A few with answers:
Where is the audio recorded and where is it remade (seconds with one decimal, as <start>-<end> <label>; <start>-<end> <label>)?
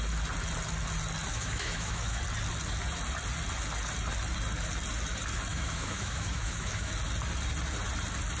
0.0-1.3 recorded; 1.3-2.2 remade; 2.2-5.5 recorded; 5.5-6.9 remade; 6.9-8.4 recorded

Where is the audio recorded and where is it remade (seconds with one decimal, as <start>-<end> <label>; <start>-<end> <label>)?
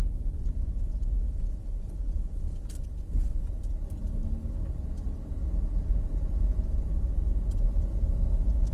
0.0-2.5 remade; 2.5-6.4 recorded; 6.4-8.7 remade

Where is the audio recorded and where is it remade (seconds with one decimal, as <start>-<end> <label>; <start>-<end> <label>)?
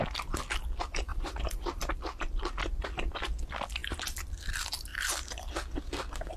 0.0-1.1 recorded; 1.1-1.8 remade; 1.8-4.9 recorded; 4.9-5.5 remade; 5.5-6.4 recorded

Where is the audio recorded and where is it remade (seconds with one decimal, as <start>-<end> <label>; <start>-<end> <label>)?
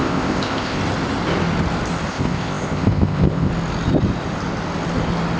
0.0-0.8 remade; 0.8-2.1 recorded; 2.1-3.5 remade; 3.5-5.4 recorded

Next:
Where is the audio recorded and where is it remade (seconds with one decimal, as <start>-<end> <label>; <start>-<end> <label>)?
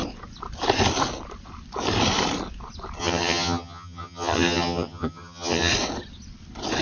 0.0-3.0 recorded; 3.0-5.7 remade; 5.7-6.8 recorded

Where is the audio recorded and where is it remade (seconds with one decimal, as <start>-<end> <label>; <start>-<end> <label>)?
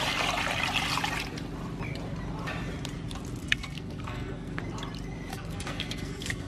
0.0-3.4 recorded; 3.4-4.6 remade; 4.6-5.3 recorded; 5.3-6.5 remade